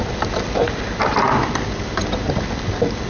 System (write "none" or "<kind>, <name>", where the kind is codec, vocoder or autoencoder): none